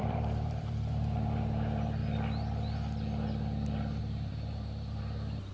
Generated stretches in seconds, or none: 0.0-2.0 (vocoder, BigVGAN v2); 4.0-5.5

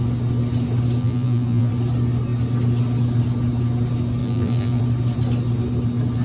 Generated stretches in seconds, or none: 1.0-1.7 (vocoder, BigVGAN v2); 4.2-4.8